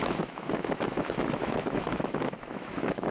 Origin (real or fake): fake